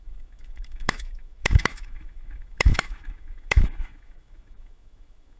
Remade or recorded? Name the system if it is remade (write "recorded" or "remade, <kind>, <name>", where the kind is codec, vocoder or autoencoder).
remade, autoencoder, DAC-VAE